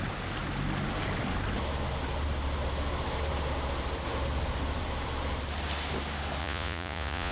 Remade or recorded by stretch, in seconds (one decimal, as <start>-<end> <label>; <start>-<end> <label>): 0.0-6.4 recorded; 6.4-7.3 remade